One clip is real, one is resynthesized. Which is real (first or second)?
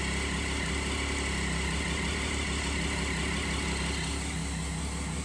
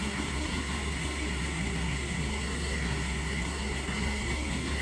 first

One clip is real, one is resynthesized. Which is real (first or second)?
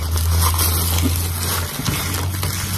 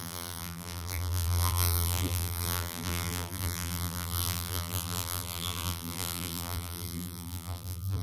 first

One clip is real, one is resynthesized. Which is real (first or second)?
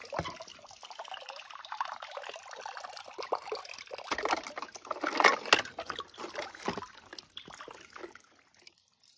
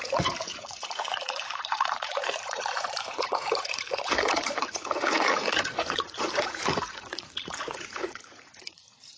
first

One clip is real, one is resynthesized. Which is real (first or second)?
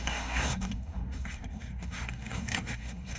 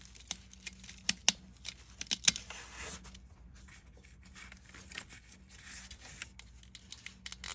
second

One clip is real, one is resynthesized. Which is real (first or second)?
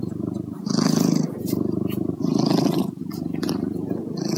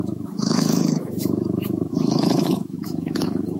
first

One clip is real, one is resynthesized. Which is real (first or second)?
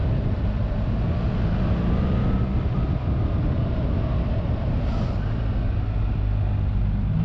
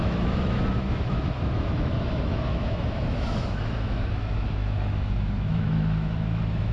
first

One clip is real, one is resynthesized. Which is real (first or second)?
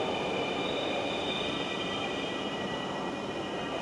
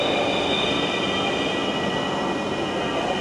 second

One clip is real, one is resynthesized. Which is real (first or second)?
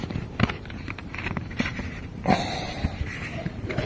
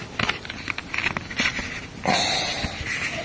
second